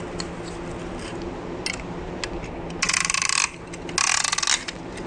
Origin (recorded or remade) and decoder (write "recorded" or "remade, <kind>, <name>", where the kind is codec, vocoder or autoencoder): recorded